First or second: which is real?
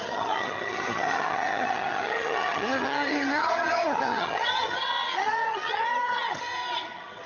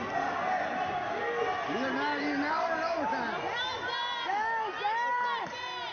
second